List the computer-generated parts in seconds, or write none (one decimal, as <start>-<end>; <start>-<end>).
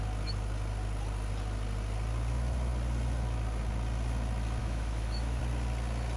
4.6-5.4